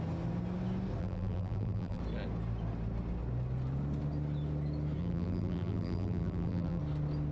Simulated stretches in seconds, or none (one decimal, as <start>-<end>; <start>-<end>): 1.0-2.0; 5.0-6.8